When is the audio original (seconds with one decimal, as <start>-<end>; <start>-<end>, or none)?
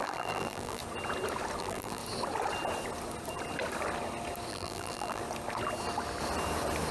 0.8-1.6; 2.0-4.5; 5.2-6.9